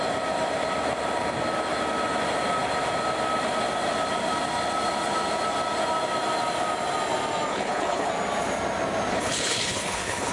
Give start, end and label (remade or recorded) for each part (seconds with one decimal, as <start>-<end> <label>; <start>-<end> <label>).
0.0-7.5 recorded; 7.5-8.1 remade; 8.1-9.1 recorded; 9.1-10.3 remade